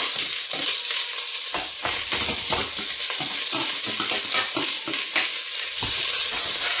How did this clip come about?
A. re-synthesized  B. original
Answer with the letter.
B